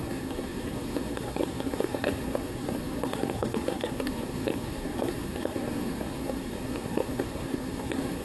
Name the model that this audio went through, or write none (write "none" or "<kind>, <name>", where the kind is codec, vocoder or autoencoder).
codec, SNAC